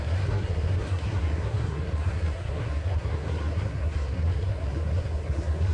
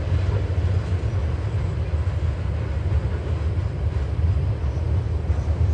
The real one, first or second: second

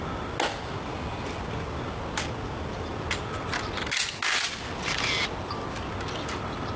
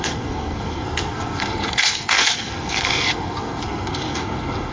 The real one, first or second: first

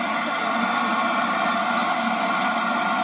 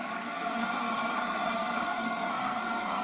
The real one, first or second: first